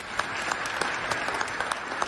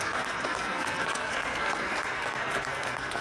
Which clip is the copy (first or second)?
second